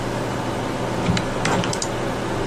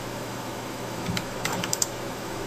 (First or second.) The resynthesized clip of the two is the second